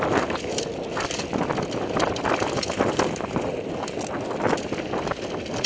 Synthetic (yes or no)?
no